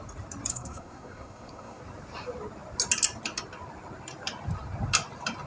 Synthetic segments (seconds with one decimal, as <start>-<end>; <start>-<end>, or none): 0.5-1.8